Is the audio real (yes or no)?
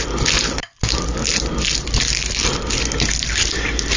yes